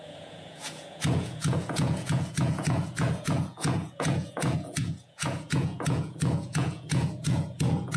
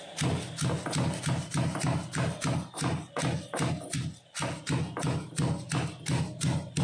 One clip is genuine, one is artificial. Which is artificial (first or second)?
first